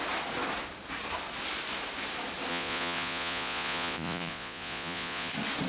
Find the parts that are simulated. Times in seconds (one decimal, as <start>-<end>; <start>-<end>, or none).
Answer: 2.5-5.3